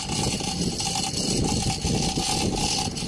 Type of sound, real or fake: real